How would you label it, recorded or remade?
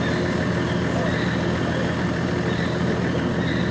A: recorded